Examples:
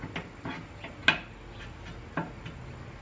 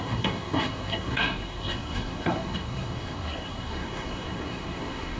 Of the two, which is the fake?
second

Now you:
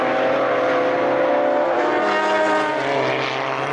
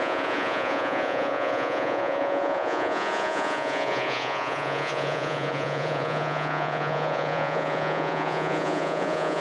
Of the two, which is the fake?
second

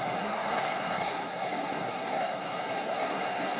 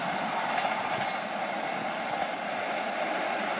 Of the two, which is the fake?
first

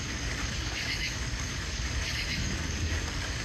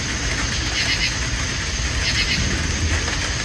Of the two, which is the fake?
first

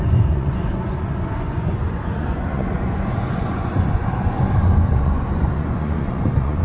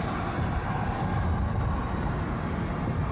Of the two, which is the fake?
first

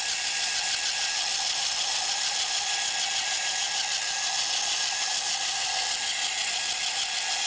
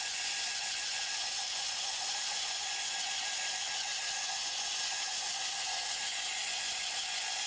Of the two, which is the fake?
second